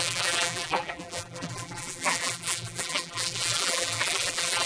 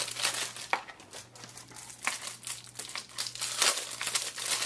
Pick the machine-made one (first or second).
first